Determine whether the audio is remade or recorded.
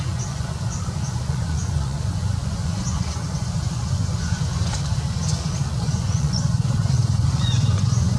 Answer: remade